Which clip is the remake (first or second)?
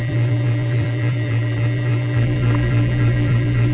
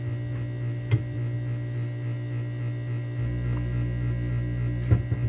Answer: first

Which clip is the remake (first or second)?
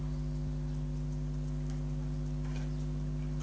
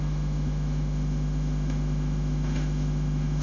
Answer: second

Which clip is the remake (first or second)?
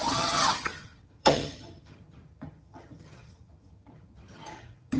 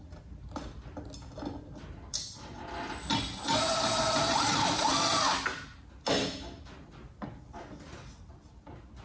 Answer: first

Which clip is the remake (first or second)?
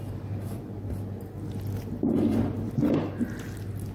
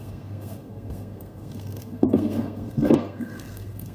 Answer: second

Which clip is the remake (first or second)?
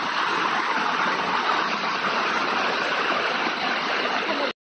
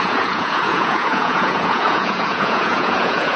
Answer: second